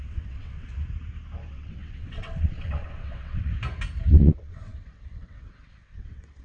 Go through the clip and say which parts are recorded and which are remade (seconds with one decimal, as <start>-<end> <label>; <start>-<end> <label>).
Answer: 0.0-0.7 remade; 0.7-1.5 recorded; 1.5-3.5 remade; 3.5-4.1 recorded; 4.1-6.4 remade

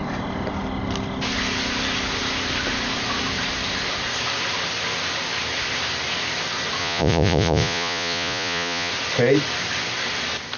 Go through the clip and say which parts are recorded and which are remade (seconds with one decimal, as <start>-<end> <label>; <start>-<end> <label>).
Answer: 0.0-6.8 recorded; 6.8-8.9 remade; 8.9-10.6 recorded

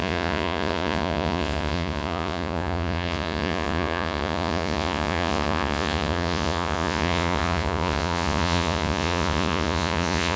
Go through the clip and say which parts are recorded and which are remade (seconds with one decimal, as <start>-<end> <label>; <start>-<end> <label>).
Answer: 0.0-10.4 remade

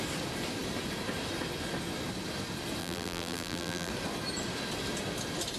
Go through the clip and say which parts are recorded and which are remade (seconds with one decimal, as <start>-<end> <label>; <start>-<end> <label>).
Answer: 0.0-2.8 recorded; 2.8-3.9 remade; 3.9-5.6 recorded

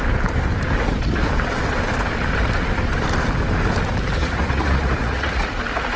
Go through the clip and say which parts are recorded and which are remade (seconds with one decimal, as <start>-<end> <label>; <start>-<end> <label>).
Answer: 0.0-4.2 recorded; 4.2-5.5 remade; 5.5-6.0 recorded

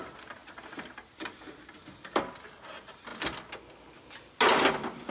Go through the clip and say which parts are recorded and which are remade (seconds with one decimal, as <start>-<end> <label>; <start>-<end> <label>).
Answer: 0.0-5.1 recorded

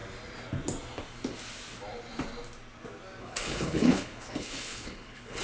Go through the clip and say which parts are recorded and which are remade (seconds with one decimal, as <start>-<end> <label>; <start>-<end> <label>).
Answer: 0.0-3.2 recorded; 3.2-5.4 remade